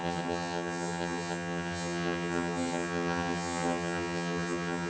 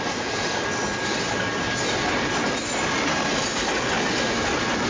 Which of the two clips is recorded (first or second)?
second